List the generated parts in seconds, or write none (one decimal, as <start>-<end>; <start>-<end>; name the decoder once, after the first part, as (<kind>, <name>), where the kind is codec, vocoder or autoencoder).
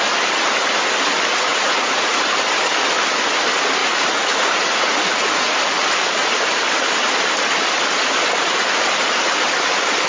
1.5-2.2 (vocoder, Vocos); 3.8-5.5